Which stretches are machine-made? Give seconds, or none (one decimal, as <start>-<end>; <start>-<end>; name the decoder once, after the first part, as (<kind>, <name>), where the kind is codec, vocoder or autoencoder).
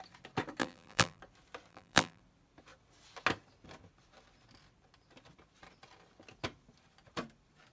0.6-1.2 (vocoder, BigVGAN v2); 1.7-2.2